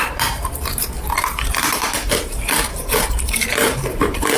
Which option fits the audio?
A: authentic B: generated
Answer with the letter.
B